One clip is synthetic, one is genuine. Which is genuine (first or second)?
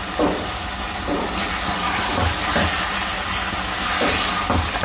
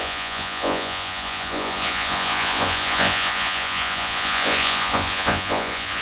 first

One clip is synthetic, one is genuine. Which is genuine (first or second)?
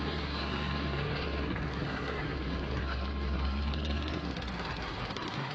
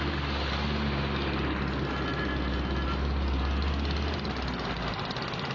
second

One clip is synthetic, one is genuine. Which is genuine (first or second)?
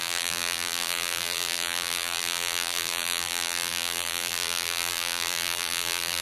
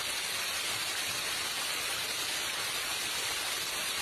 second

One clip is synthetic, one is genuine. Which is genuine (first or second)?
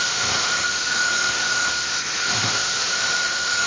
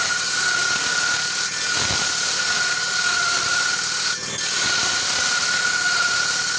second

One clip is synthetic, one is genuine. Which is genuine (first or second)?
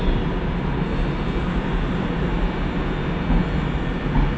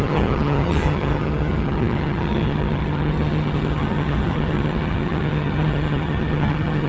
first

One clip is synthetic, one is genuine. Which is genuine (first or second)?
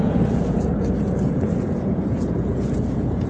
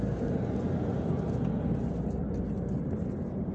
second